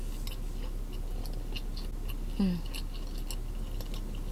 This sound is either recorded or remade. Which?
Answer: recorded